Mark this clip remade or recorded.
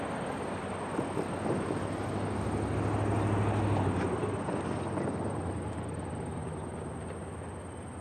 recorded